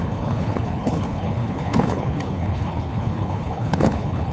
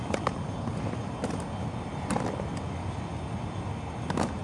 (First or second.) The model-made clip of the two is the first